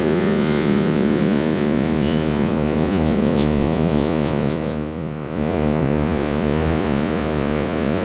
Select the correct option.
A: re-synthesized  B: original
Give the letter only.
A